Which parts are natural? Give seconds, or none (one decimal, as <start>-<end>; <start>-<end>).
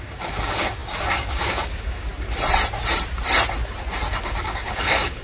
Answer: 2.1-4.2